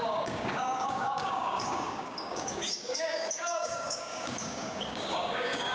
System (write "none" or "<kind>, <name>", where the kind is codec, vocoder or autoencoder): codec, DAC